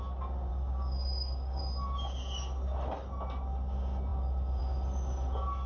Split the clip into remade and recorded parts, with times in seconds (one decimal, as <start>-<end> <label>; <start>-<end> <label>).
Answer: 0.0-0.5 recorded; 0.5-1.6 remade; 1.6-5.7 recorded